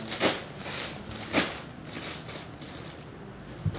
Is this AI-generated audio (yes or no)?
no